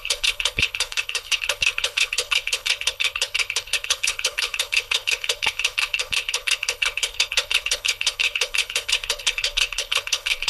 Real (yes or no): no